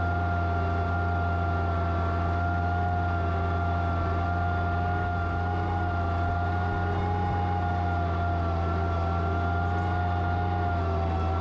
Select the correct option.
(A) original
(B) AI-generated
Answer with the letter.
A